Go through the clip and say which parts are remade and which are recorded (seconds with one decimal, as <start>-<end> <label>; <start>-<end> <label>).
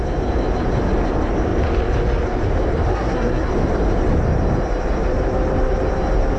0.0-2.9 recorded; 2.9-3.5 remade; 3.5-6.4 recorded